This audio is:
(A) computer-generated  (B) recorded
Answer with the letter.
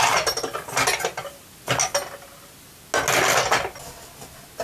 B